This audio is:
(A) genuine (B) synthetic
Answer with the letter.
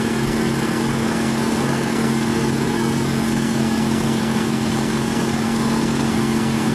B